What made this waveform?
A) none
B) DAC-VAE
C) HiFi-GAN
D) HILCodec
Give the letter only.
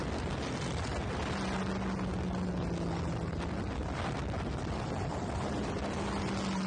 A